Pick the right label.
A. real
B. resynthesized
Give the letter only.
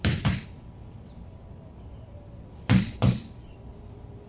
A